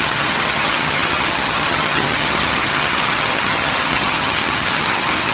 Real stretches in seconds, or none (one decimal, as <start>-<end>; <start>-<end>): none

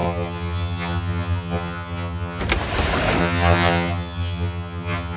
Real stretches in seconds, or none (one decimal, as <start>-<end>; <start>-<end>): 2.4-3.2

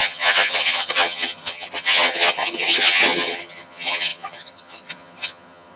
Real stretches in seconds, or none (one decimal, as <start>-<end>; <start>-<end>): none

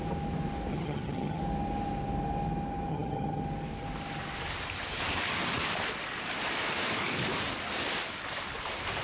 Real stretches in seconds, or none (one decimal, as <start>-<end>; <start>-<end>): 0.0-0.7; 1.4-2.9; 3.4-9.0